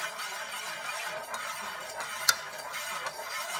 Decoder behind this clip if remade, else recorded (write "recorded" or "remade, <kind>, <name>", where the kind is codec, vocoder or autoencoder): recorded